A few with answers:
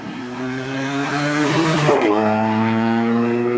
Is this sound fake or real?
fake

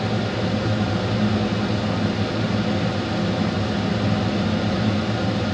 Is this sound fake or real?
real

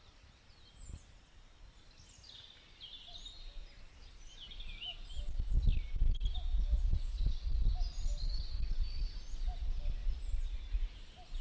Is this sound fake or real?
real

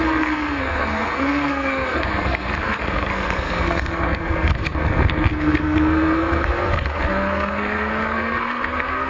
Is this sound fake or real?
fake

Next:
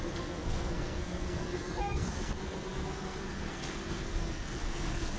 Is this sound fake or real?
fake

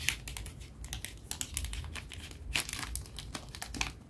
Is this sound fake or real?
real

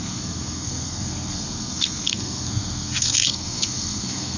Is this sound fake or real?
fake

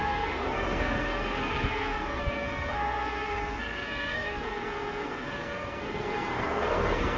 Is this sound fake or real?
fake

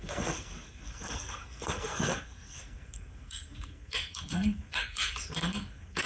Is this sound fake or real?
fake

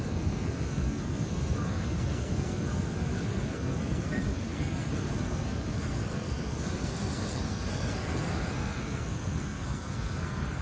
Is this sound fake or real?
fake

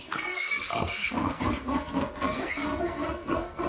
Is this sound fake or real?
fake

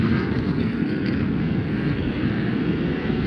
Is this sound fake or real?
fake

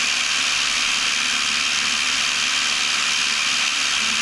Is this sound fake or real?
real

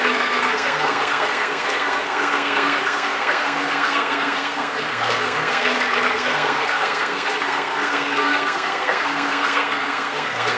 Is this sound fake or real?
fake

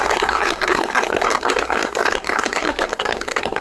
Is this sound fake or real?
fake